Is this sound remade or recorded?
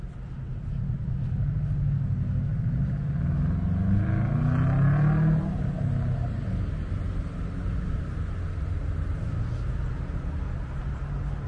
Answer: recorded